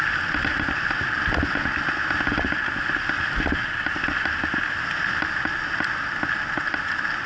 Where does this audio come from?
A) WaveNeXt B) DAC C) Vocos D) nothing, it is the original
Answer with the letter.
D